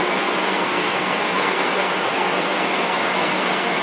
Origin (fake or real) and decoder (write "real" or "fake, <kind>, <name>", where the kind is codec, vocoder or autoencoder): fake, codec, SNAC